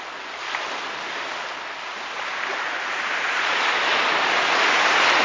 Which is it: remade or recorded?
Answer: recorded